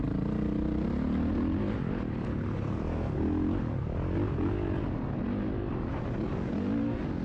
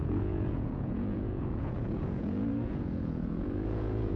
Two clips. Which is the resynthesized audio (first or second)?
second